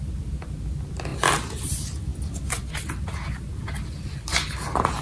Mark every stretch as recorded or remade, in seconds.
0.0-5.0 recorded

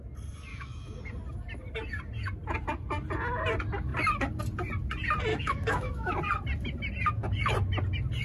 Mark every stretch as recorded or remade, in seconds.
0.0-0.5 recorded; 0.5-1.0 remade; 1.0-5.3 recorded; 5.3-6.1 remade; 6.1-8.2 recorded

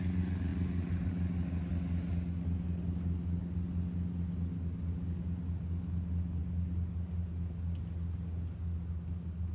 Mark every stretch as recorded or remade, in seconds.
0.0-9.5 recorded

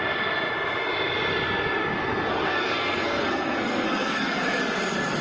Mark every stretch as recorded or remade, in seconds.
0.0-2.3 recorded; 2.3-4.6 remade; 4.6-5.2 recorded